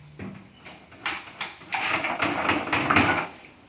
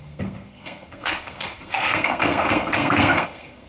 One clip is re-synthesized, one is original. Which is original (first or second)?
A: first